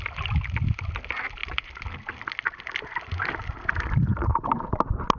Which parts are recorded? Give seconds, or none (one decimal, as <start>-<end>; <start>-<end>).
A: 0.0-5.2